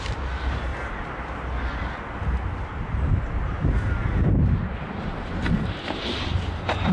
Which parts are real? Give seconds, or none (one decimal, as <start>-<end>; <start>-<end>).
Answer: 0.7-2.1